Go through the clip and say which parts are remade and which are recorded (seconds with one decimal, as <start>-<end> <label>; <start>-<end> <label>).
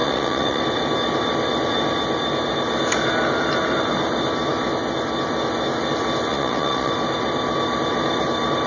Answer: 0.0-0.6 remade; 0.6-6.3 recorded; 6.3-6.9 remade; 6.9-8.7 recorded